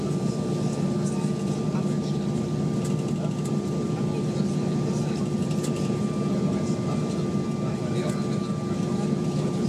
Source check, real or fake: real